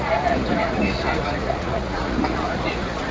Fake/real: fake